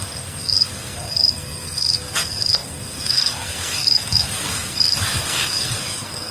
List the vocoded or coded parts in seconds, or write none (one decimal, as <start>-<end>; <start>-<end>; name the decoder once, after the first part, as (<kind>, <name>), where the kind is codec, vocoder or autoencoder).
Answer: 0.0-6.3 (codec, SNAC)